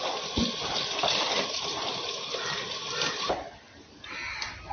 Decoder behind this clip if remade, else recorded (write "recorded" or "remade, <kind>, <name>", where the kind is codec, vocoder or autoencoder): remade, vocoder, BigVGAN v2